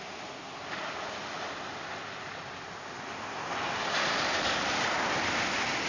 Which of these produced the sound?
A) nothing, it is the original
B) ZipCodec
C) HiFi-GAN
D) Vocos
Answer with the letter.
A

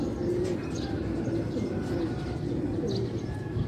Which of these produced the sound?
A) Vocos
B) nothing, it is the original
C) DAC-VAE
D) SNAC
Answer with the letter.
B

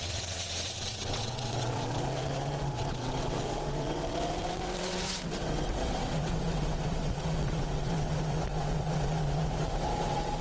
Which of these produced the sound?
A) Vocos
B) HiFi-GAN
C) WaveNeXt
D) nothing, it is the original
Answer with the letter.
C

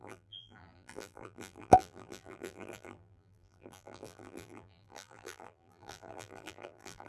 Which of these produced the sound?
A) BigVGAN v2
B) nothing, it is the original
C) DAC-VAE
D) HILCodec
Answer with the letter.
A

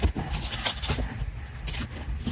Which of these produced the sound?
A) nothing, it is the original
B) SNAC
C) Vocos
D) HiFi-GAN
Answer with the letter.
A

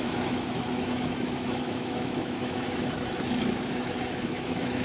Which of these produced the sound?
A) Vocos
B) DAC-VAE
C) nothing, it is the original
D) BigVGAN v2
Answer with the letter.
B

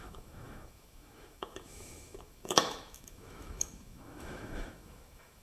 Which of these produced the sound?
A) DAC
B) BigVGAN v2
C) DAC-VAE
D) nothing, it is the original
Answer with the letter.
C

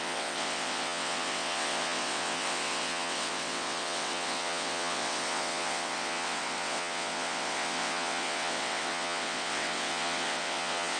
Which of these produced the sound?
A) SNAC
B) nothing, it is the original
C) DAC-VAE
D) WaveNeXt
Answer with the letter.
D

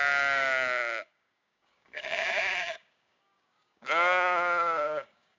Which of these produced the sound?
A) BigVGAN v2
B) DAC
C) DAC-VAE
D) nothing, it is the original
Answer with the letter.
B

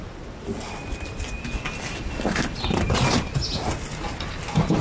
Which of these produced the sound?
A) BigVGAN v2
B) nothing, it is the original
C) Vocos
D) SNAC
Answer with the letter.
B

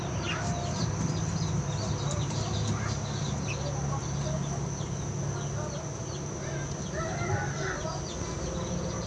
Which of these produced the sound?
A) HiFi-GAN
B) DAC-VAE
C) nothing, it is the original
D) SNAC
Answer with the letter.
C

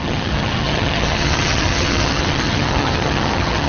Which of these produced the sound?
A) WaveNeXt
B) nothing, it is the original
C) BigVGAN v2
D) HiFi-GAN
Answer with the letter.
D